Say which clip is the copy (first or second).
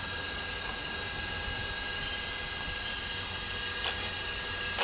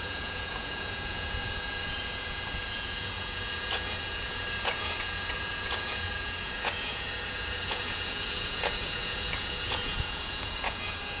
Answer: second